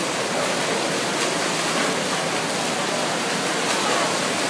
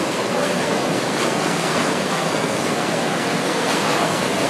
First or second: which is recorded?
first